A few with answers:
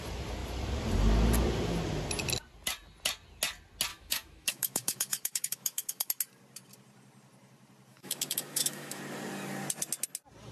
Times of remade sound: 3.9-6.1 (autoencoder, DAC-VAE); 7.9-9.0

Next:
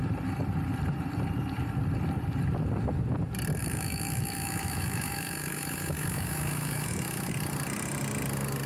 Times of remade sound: 3.6-7.3 (autoencoder, DAC-VAE)

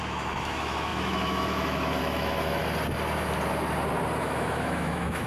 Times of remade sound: 0.0-2.6 (autoencoder, DAC-VAE); 4.2-5.3

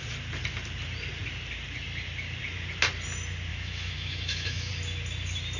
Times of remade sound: 3.5-4.7 (autoencoder, DAC-VAE)